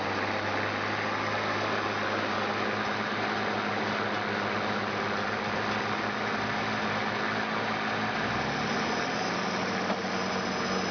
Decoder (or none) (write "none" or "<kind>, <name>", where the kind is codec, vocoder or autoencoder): none